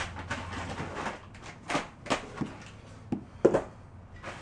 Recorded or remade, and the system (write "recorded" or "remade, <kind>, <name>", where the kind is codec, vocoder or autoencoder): recorded